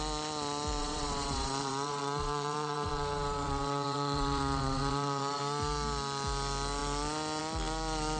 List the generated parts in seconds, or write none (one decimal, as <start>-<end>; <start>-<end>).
0.8-5.4